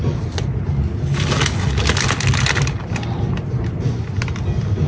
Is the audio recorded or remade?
recorded